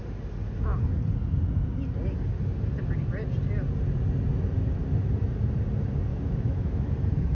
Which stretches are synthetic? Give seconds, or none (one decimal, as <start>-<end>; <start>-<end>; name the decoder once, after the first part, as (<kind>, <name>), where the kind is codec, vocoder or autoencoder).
6.1-7.3 (autoencoder, DAC-VAE)